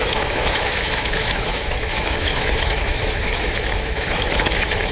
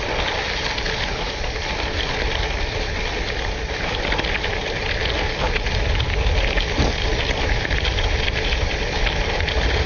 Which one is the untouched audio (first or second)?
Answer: second